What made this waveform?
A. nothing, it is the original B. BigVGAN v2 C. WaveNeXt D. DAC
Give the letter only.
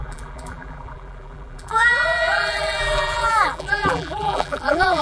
B